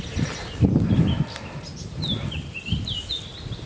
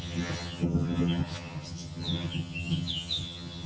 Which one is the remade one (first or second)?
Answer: second